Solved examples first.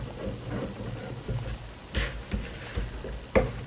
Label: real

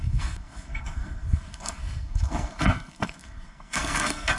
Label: fake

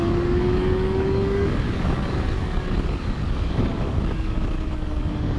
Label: fake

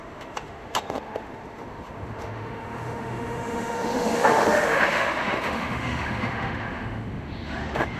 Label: fake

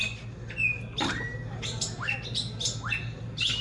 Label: real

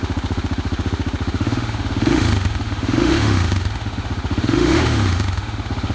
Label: fake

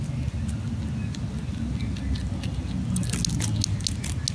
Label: real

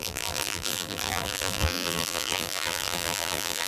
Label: fake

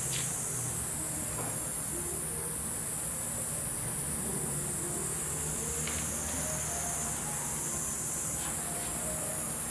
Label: real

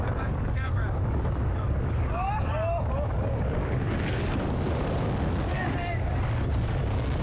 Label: fake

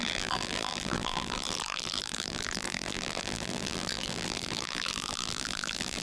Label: fake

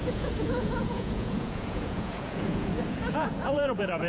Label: fake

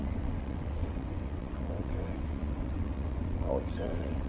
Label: fake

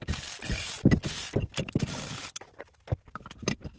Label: real